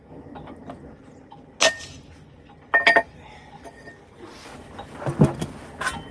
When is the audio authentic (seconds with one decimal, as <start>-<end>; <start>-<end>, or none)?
0.0-6.1